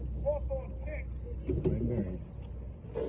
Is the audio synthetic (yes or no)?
no